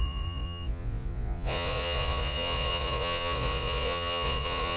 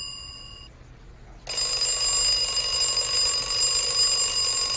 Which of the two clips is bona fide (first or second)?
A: second